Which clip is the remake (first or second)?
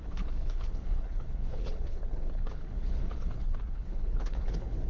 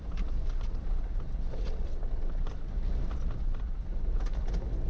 first